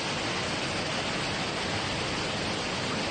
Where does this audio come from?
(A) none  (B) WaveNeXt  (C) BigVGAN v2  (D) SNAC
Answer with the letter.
A